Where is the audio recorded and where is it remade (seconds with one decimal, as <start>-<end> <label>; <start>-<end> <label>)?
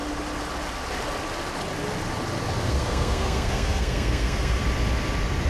0.0-2.6 recorded; 2.6-4.6 remade; 4.6-5.5 recorded